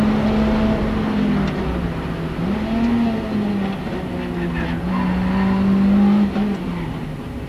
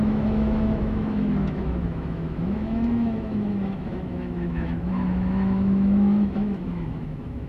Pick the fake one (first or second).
second